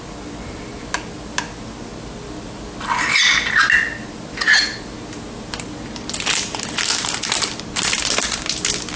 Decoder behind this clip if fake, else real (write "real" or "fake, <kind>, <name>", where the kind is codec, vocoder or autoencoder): real